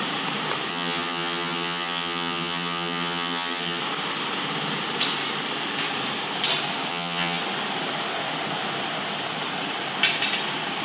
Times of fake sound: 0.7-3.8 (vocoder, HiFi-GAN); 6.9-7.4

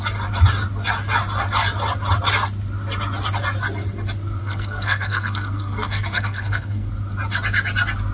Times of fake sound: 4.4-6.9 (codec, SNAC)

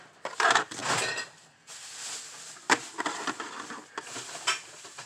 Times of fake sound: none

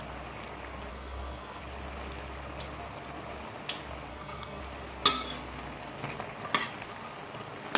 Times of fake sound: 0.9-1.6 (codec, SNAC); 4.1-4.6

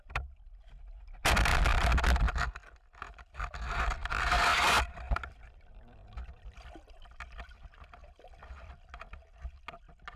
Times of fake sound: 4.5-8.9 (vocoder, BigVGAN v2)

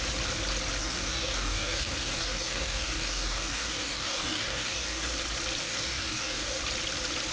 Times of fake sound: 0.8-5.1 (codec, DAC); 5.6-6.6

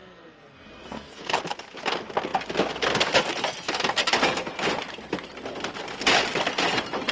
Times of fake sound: 0.0-1.4 (codec, SNAC)

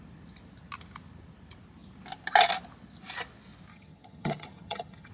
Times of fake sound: 3.7-5.1 (vocoder, HiFi-GAN)